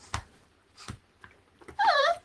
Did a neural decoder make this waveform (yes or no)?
no